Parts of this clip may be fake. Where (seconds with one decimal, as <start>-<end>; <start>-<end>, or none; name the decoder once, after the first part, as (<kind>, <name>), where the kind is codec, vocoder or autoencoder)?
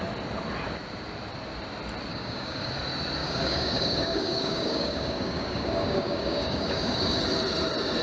2.1-2.7 (codec, DAC); 3.2-7.2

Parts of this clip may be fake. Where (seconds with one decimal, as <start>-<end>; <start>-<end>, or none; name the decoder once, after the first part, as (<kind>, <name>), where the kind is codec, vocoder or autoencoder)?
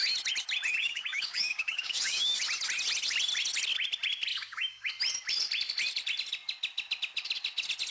0.8-2.4 (codec, DAC); 4.3-4.9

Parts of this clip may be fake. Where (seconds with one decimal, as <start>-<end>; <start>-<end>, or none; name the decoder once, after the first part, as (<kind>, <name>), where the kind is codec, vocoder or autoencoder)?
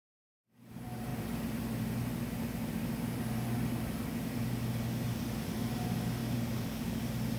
6.2-7.0 (codec, DAC)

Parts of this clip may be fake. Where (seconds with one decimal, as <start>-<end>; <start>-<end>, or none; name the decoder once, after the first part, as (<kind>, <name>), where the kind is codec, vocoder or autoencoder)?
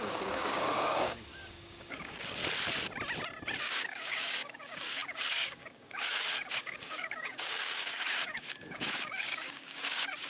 0.0-2.4 (codec, DAC); 3.6-10.3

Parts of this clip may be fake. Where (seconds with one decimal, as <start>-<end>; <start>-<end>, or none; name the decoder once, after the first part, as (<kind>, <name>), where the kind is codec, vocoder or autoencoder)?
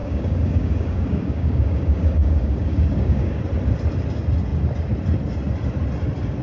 0.0-3.4 (codec, DAC)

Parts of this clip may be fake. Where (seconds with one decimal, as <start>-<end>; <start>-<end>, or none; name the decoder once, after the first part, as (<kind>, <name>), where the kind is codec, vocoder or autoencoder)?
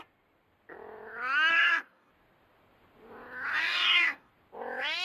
1.5-2.1 (codec, DAC); 3.5-4.3